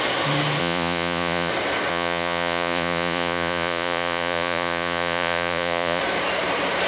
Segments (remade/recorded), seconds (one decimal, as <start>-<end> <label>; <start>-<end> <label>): 0.0-0.6 recorded; 0.6-1.5 remade; 1.5-1.9 recorded; 1.9-6.0 remade; 6.0-6.9 recorded